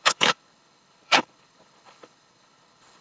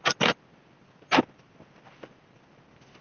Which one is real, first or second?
second